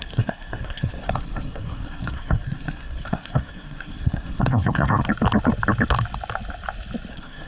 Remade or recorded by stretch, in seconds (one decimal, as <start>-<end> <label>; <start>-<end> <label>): 0.0-5.0 remade; 5.0-7.1 recorded; 7.1-7.5 remade